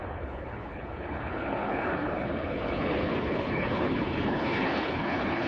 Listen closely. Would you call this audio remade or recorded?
remade